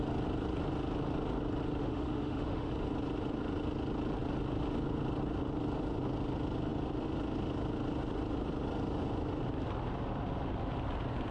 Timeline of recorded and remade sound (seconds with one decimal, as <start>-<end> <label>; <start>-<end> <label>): 0.0-1.8 recorded; 1.8-2.7 remade; 2.7-11.3 recorded